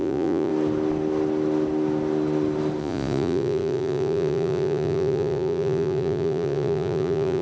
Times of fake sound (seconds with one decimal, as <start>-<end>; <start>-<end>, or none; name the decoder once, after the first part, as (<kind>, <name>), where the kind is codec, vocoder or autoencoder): 0.0-0.5 (vocoder, Vocos); 2.8-7.4